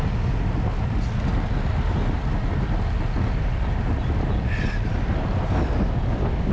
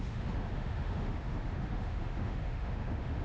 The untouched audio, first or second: first